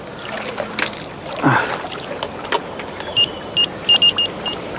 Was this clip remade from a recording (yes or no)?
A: no